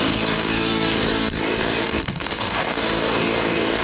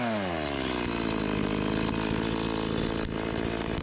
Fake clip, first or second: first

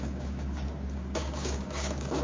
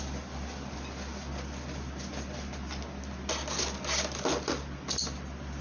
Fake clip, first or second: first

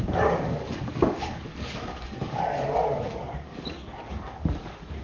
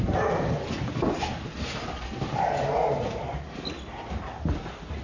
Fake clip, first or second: first